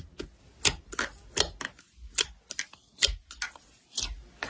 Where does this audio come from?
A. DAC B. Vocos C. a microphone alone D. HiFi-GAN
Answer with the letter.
C